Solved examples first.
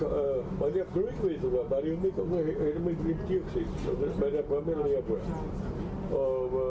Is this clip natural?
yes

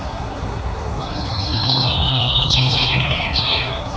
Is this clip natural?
no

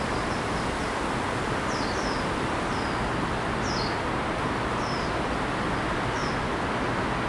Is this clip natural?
yes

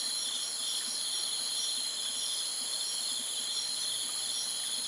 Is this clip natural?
yes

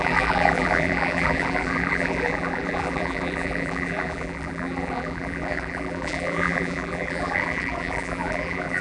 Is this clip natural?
no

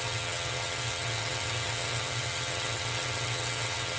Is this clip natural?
no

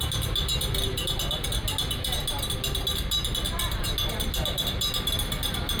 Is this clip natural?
yes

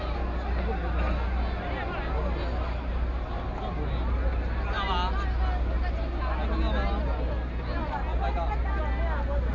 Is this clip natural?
yes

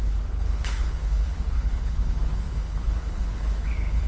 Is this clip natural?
no